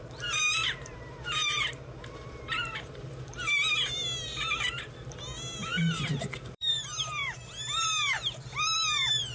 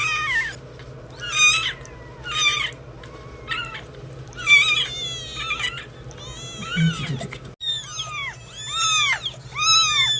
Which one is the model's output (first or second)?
first